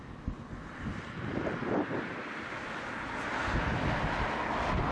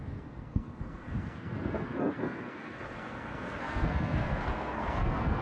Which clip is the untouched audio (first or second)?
first